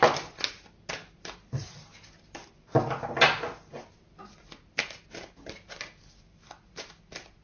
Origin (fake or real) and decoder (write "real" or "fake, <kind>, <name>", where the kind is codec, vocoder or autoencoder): real